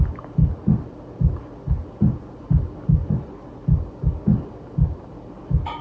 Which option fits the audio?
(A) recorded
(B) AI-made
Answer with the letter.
A